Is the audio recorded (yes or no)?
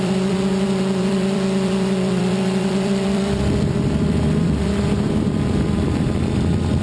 no